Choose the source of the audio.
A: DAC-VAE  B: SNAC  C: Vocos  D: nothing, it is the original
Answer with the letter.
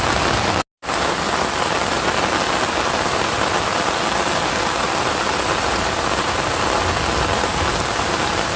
D